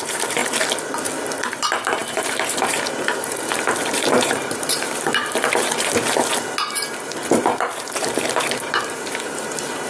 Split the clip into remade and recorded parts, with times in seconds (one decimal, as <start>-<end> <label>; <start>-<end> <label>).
0.0-0.4 remade; 0.4-1.5 recorded; 1.5-6.2 remade; 6.2-7.3 recorded; 7.3-9.9 remade